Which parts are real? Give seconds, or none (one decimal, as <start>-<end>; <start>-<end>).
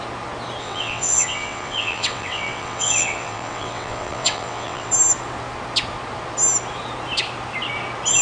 0.0-0.6; 4.9-8.2